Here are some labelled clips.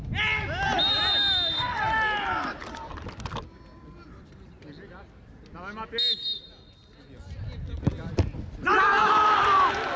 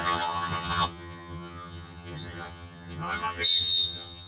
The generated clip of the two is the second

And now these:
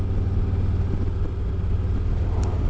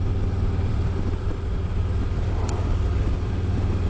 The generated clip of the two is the second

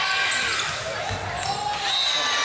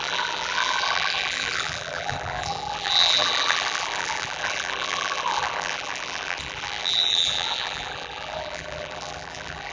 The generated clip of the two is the second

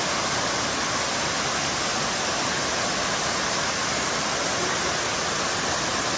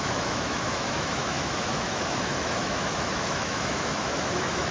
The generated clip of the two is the second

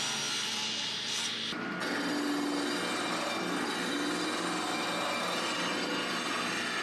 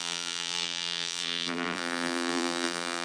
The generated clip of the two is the second